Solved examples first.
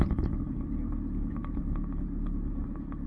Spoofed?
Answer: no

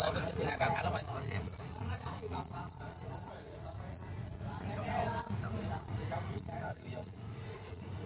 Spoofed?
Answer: yes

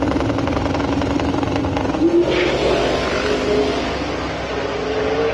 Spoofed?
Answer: no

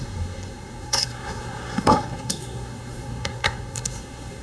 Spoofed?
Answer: yes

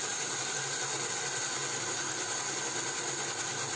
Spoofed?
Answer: no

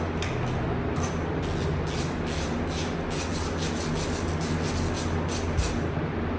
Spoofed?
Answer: no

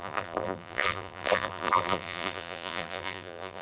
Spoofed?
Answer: yes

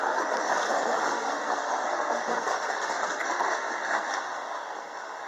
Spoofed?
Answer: yes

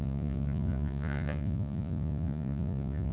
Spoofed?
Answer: yes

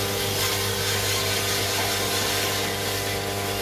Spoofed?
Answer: no